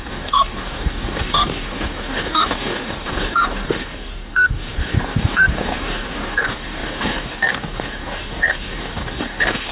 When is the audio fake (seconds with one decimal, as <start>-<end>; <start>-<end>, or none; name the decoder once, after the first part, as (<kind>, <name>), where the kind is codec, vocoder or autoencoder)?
0.0-9.7 (codec, DAC)